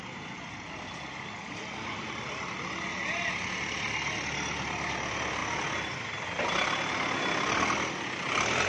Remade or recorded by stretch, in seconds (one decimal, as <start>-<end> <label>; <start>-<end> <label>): 0.0-8.7 recorded